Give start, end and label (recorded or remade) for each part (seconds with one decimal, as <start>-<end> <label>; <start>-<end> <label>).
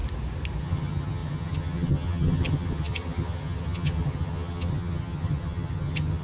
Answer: 0.0-0.6 recorded; 0.6-6.2 remade